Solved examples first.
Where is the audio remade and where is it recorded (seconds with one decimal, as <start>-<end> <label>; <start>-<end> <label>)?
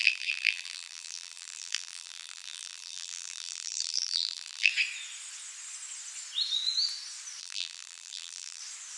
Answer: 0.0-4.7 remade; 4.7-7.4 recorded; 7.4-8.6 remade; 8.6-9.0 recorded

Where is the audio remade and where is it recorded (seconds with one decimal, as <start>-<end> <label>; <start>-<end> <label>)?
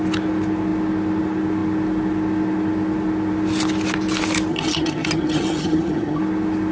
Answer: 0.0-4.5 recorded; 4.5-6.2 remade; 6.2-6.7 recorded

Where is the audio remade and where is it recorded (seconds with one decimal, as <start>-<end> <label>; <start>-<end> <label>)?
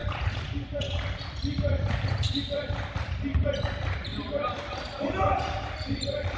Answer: 0.0-6.4 recorded